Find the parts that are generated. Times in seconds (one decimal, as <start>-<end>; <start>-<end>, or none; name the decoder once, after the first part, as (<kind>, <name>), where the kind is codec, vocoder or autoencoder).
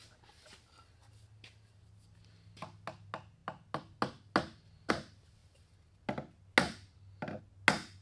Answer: none